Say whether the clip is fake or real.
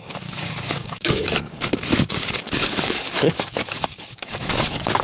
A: fake